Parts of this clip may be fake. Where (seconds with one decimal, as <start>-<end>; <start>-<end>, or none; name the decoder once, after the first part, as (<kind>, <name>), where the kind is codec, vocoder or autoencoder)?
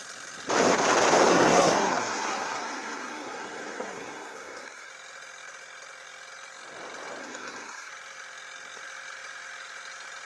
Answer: 1.3-4.9 (codec, SNAC); 7.2-7.9